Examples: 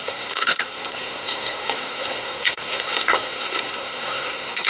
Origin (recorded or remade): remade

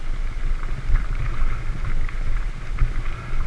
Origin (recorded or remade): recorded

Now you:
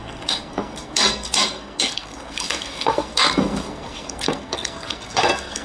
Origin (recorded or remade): remade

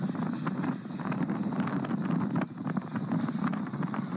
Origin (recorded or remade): recorded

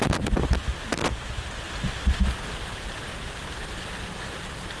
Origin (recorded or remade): recorded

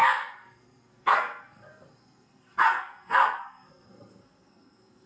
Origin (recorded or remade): remade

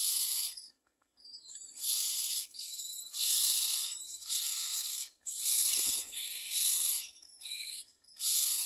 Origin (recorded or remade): remade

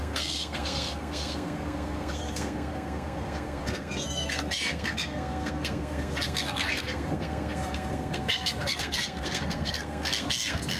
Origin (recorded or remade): remade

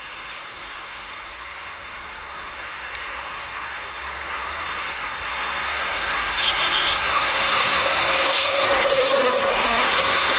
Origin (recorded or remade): remade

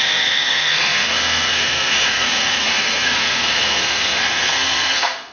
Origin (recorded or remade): remade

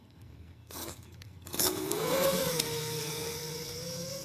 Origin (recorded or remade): remade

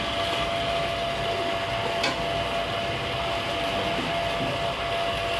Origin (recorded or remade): recorded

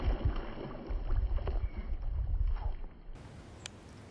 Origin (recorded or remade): recorded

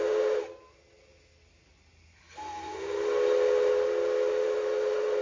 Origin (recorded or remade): recorded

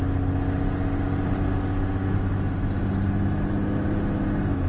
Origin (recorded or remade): recorded